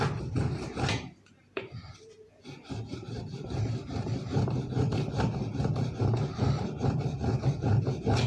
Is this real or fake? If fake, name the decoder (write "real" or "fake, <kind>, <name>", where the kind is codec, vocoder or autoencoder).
fake, vocoder, BigVGAN v2